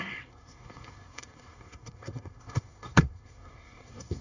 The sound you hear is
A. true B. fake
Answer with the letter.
B